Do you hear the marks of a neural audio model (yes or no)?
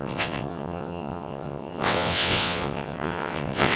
yes